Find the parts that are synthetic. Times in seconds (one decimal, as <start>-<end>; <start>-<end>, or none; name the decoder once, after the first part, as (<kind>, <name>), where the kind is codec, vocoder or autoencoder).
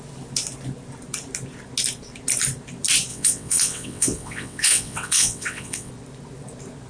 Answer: 3.1-5.9 (vocoder, WaveNeXt)